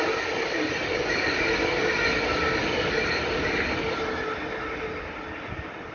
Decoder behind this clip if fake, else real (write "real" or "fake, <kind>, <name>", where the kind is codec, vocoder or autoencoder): real